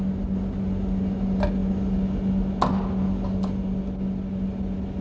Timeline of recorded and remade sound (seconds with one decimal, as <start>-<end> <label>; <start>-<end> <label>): 0.0-5.0 recorded